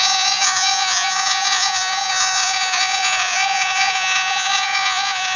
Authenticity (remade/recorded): remade